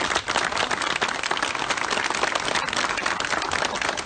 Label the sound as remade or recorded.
recorded